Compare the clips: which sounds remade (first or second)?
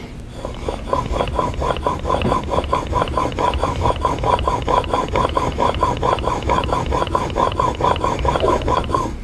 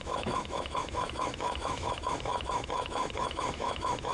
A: second